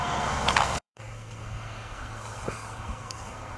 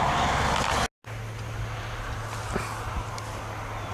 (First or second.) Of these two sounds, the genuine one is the second